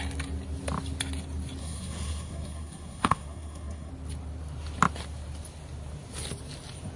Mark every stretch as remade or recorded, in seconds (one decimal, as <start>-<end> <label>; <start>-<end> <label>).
0.0-1.6 recorded; 1.6-3.9 remade; 3.9-7.0 recorded